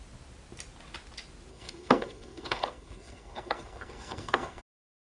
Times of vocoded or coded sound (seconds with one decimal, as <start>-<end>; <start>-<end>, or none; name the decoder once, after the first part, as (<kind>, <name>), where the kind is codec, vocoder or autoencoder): 1.5-4.6 (codec, SNAC)